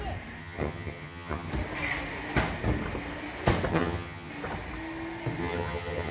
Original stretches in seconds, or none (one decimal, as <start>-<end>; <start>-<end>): 0.0-0.4; 1.5-3.7; 4.3-5.4